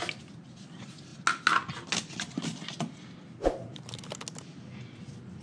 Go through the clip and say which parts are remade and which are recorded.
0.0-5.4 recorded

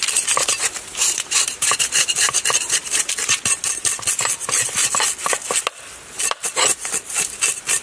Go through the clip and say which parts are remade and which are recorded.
0.0-0.5 recorded; 0.5-3.1 remade; 3.1-7.8 recorded

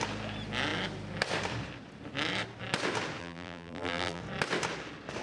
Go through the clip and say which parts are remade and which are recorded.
0.0-3.2 recorded; 3.2-4.2 remade; 4.2-5.2 recorded

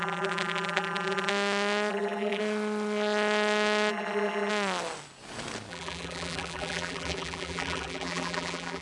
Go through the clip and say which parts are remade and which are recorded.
0.0-1.3 remade; 1.3-1.9 recorded; 1.9-2.4 remade; 2.4-3.9 recorded; 3.9-4.5 remade; 4.5-5.7 recorded; 5.7-8.8 remade